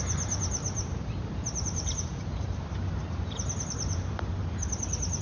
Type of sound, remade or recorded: remade